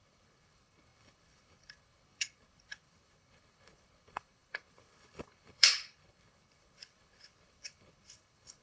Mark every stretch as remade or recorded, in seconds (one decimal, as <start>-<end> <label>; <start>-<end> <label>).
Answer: 0.0-8.6 remade